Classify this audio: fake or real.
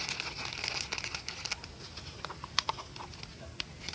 real